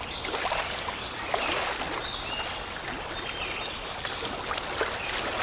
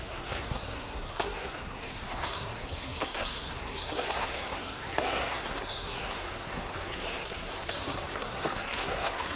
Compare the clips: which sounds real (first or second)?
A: first